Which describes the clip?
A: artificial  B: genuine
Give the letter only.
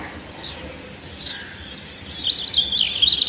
B